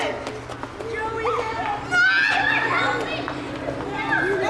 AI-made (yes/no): no